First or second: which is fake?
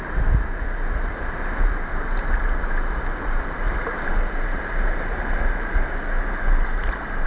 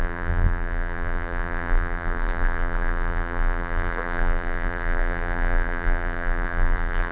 second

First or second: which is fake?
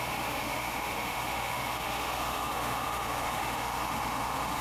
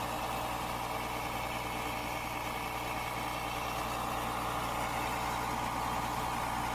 first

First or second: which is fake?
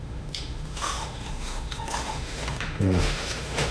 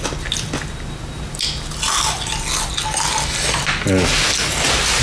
first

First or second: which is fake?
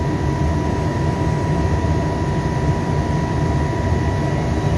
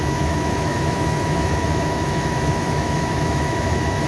second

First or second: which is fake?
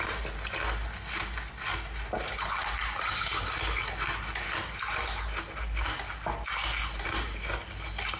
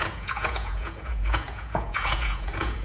second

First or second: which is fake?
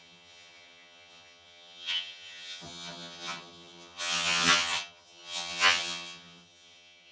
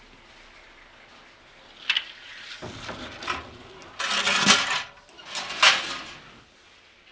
first